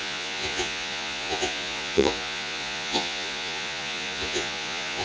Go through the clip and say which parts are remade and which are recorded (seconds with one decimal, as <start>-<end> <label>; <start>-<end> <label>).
0.0-5.0 remade